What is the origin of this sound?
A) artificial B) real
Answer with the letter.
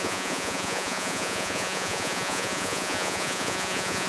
A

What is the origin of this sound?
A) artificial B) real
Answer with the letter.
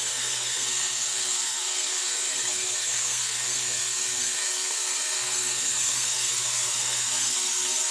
A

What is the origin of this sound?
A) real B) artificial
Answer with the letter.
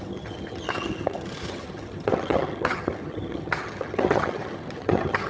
B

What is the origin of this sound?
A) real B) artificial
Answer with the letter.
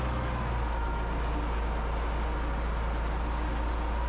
A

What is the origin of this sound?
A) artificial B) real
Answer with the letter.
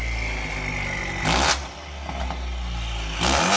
B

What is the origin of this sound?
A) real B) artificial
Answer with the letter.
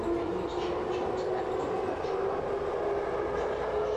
A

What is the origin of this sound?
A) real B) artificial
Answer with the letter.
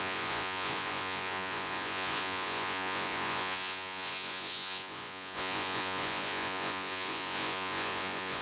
B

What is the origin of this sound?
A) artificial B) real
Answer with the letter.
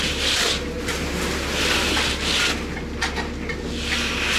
B